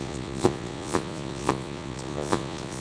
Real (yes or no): no